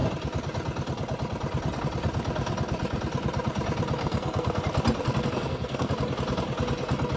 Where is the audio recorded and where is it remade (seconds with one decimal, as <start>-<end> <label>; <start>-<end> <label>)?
0.0-4.0 recorded; 4.0-4.6 remade; 4.6-5.0 recorded; 5.0-5.9 remade; 5.9-7.2 recorded